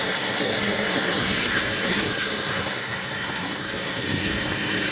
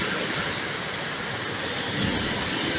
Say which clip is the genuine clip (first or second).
second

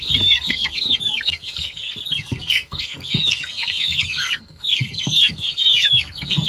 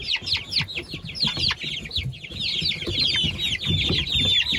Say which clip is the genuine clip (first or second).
second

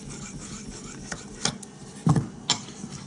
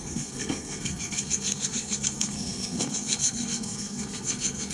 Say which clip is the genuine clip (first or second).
first